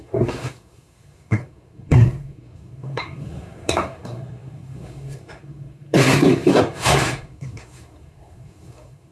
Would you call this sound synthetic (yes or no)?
yes